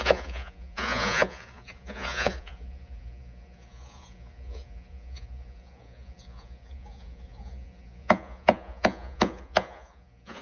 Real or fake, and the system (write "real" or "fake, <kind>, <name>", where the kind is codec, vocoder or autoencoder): fake, vocoder, Vocos